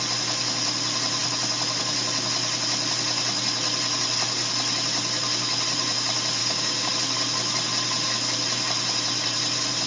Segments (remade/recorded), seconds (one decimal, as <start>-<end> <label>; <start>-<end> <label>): 0.0-6.4 recorded; 6.4-6.9 remade; 6.9-9.9 recorded